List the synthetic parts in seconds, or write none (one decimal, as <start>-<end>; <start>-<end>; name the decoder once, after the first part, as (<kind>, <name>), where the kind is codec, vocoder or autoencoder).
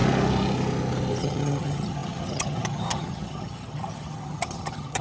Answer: 1.2-5.0 (vocoder, HiFi-GAN)